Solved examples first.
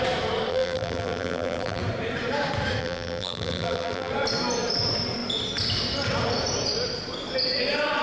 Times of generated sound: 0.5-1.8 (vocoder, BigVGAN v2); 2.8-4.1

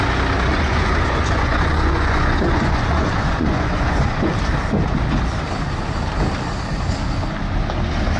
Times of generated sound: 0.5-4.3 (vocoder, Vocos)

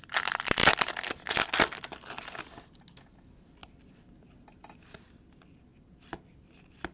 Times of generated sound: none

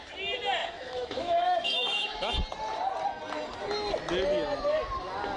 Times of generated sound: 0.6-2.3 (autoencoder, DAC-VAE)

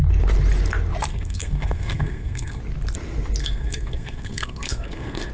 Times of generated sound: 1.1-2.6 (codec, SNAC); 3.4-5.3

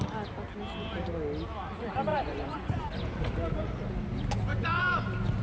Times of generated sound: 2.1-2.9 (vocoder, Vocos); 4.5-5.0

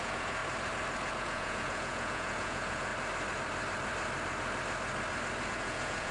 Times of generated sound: 0.0-0.4 (vocoder, Vocos); 1.2-2.9; 5.5-6.1